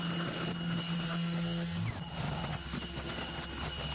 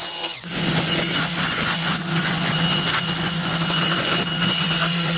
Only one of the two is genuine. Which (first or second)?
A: first